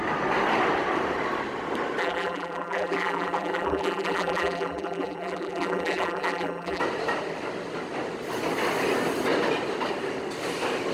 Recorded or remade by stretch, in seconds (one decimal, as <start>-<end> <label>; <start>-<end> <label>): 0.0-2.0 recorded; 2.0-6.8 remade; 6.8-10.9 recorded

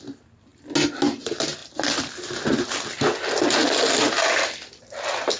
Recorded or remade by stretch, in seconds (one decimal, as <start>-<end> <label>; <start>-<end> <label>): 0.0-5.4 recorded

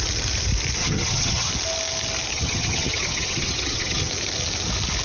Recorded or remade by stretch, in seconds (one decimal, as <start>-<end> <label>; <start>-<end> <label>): 0.0-0.8 recorded; 0.8-1.5 remade; 1.5-2.3 recorded; 2.3-4.1 remade; 4.1-5.0 recorded

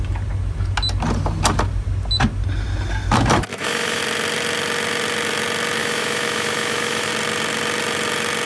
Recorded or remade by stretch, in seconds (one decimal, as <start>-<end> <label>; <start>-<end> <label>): 0.0-3.5 recorded; 3.5-4.0 remade; 4.0-5.8 recorded; 5.8-7.1 remade; 7.1-8.5 recorded

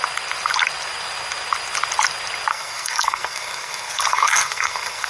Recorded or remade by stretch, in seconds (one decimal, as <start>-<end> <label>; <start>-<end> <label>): 0.0-2.5 recorded; 2.5-5.1 remade